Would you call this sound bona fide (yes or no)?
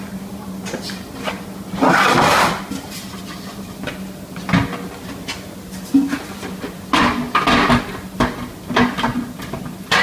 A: yes